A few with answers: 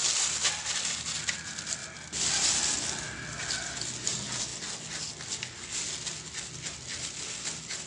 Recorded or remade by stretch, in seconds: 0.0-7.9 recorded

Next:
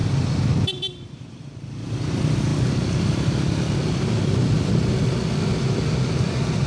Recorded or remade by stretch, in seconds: 0.0-1.5 remade; 1.5-6.7 recorded

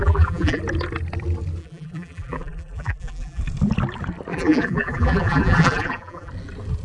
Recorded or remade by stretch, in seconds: 0.0-0.6 remade; 0.6-1.6 recorded; 1.6-3.4 remade; 3.4-4.3 recorded; 4.3-6.3 remade; 6.3-6.8 recorded

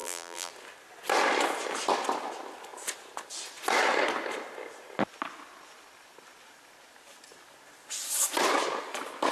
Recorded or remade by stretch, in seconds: 0.0-0.5 remade; 0.5-9.3 recorded

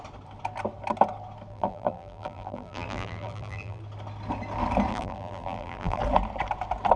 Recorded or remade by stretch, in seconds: 0.0-1.5 recorded; 1.5-3.8 remade; 3.8-4.9 recorded; 4.9-6.0 remade; 6.0-7.0 recorded

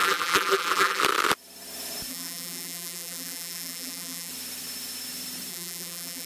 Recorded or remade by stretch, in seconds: 0.0-1.0 remade; 1.0-2.1 recorded; 2.1-4.3 remade; 4.3-5.5 recorded; 5.5-6.3 remade